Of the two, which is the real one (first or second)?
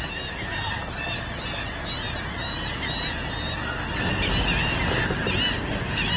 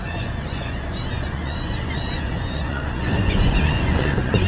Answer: first